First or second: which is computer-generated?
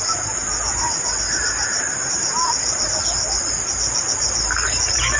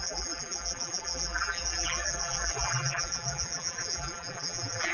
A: second